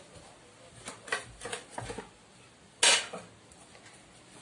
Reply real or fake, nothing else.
real